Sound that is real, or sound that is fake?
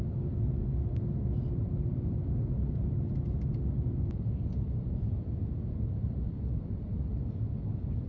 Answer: real